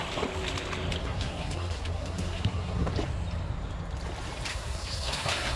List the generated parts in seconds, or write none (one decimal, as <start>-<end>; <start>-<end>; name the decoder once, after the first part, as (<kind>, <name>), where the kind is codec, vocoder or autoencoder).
1.0-2.9 (codec, SNAC); 4.5-5.6